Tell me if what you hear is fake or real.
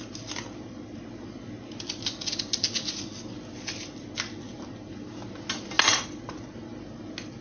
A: real